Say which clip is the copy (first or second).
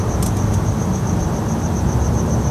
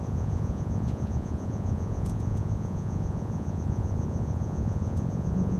second